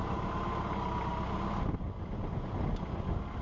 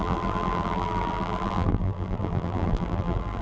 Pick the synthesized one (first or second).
second